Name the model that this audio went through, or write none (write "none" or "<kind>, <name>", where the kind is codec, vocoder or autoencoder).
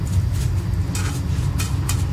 none